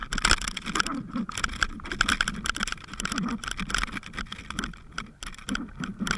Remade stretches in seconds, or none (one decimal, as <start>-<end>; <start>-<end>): 2.3-4.8; 5.7-6.2